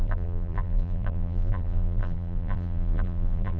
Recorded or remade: remade